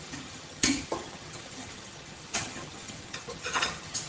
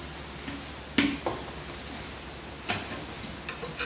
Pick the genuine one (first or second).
second